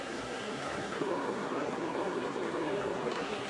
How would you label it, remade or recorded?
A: remade